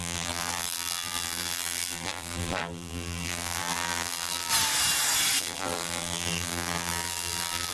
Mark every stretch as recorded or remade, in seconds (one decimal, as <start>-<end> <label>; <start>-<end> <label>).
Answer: 0.0-4.5 remade; 4.5-5.4 recorded; 5.4-7.7 remade